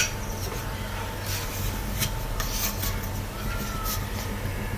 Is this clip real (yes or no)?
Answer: yes